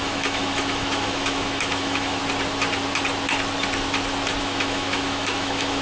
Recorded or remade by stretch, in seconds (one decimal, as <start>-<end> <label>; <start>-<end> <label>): 0.0-2.2 remade; 2.2-4.4 recorded; 4.4-5.8 remade